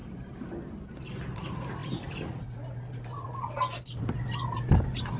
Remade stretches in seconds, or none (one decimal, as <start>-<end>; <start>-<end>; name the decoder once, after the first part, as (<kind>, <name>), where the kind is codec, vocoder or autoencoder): none